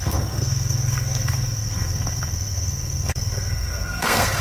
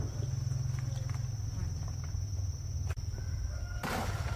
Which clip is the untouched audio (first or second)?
second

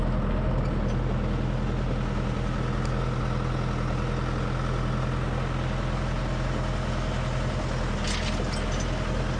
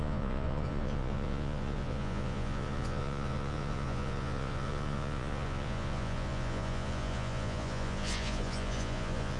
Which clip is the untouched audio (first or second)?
first